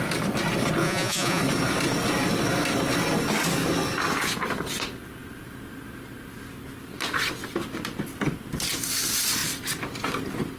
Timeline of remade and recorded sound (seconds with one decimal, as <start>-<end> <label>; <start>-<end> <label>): 0.0-0.8 recorded; 0.8-1.4 remade; 1.4-10.6 recorded